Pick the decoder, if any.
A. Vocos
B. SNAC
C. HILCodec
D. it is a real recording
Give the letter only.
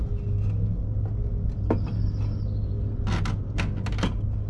D